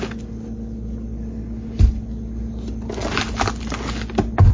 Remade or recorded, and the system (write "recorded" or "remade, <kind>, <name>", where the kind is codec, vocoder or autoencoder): recorded